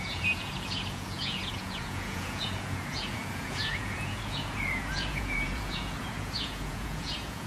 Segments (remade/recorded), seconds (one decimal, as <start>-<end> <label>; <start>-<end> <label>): 0.0-7.5 remade